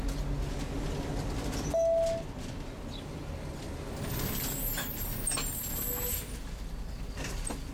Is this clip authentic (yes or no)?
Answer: yes